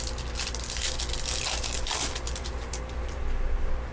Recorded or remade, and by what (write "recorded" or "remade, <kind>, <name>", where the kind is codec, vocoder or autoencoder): recorded